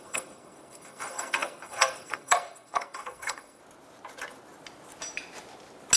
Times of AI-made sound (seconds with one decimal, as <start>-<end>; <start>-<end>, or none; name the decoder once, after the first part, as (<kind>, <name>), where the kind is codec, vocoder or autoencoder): 0.0-3.6 (codec, SNAC)